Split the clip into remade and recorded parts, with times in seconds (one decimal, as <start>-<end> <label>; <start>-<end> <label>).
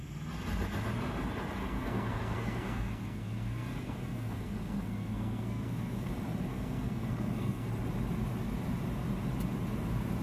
0.0-1.6 recorded; 1.6-6.1 remade; 6.1-6.5 recorded; 6.5-7.7 remade; 7.7-10.2 recorded